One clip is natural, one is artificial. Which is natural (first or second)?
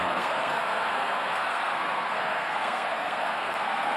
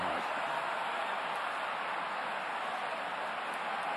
second